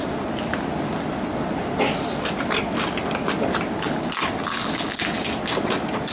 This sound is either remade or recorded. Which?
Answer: recorded